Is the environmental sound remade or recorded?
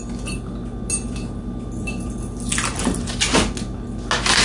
recorded